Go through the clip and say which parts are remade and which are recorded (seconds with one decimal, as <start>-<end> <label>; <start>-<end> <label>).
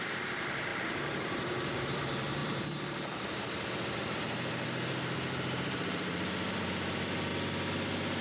0.0-7.3 remade; 7.3-8.2 recorded